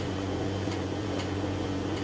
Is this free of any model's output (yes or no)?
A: no